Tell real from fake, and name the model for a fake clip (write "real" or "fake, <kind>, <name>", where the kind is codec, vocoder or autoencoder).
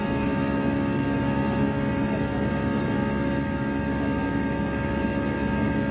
fake, codec, DAC